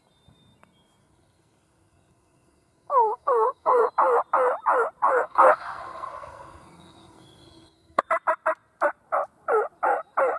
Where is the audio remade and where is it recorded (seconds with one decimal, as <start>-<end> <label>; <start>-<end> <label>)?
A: 0.0-1.0 recorded; 1.0-3.9 remade; 3.9-5.1 recorded; 5.1-8.0 remade; 8.0-10.4 recorded